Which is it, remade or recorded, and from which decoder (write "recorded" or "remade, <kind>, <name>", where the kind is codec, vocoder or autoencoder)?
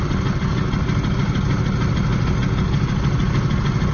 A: recorded